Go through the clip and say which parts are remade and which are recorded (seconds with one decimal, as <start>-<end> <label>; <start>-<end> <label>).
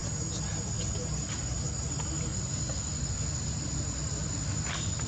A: 0.0-5.1 recorded